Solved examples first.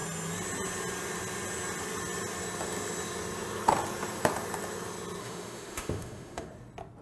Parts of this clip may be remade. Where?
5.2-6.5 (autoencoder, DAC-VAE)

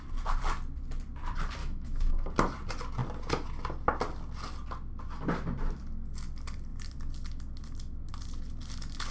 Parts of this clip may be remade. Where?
1.6-2.1 (autoencoder, DAC-VAE)